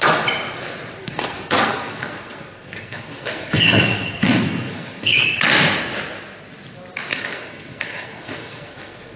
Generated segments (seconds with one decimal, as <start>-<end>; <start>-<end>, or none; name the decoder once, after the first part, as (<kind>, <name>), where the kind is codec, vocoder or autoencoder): 1.0-5.4 (codec, SNAC); 7.1-9.2

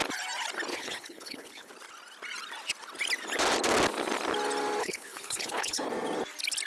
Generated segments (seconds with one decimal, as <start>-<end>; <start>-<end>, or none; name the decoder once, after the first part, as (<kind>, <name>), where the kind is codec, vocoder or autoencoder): 0.7-1.7 (codec, HILCodec); 4.8-5.9